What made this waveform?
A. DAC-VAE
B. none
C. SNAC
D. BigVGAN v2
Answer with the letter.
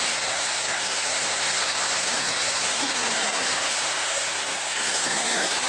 C